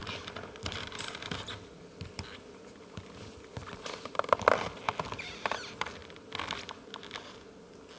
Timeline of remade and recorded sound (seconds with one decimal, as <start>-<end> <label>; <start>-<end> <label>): 0.0-4.8 remade; 4.8-6.0 recorded; 6.0-6.8 remade; 6.8-8.0 recorded